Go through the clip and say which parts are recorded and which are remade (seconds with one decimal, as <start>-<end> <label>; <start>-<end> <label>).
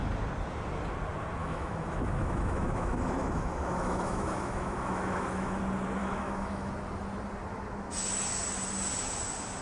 0.0-1.4 recorded; 1.4-5.6 remade; 5.6-6.0 recorded; 6.0-6.7 remade; 6.7-9.6 recorded